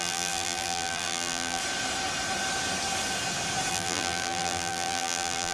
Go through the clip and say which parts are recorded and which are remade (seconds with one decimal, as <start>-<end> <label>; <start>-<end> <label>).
0.0-1.6 remade; 1.6-3.7 recorded; 3.7-5.5 remade